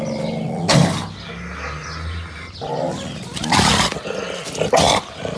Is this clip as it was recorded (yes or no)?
yes